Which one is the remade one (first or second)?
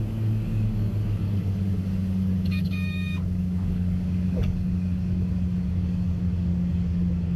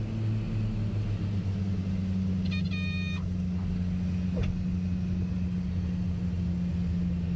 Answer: first